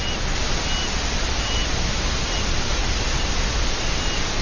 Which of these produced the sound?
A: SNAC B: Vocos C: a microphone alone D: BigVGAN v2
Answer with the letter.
C